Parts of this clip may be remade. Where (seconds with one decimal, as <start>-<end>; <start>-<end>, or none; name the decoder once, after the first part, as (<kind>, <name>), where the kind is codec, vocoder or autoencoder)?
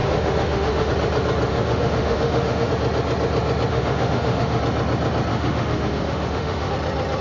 0.0-0.9 (autoencoder, DAC-VAE); 1.5-2.7; 3.7-4.6; 5.3-6.7